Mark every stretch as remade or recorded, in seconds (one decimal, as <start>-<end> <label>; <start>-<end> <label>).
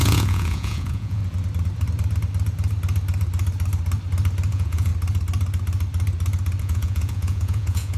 0.0-1.2 remade; 1.2-4.5 recorded; 4.5-4.9 remade; 4.9-6.6 recorded; 6.6-8.0 remade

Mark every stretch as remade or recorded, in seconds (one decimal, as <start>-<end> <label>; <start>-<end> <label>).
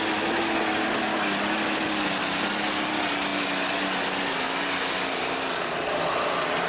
0.0-6.7 recorded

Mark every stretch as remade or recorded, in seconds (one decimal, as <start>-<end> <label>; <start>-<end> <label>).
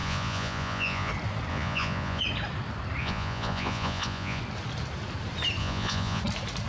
0.0-1.1 remade; 1.1-1.5 recorded; 1.5-2.2 remade; 2.2-3.0 recorded; 3.0-4.4 remade; 4.4-5.6 recorded; 5.6-6.2 remade; 6.2-6.7 recorded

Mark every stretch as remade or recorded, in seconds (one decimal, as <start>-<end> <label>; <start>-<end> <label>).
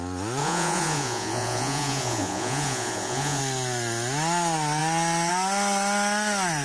0.0-0.4 recorded; 0.4-3.4 remade; 3.4-6.6 recorded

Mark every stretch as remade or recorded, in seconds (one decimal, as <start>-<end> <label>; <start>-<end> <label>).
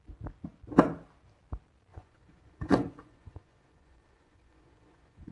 0.0-1.9 recorded; 1.9-5.3 remade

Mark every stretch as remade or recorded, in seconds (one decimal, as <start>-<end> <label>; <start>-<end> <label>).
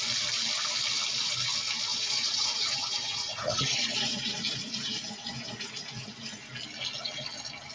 0.0-1.9 recorded; 1.9-6.5 remade; 6.5-7.7 recorded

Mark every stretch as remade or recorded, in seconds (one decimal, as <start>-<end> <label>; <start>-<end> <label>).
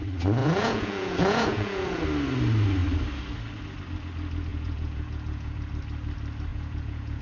0.0-0.4 recorded; 0.4-2.0 remade; 2.0-4.5 recorded; 4.5-5.7 remade; 5.7-6.5 recorded; 6.5-7.2 remade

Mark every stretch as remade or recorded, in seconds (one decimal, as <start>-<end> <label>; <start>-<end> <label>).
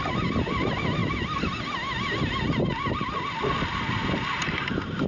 0.0-5.1 recorded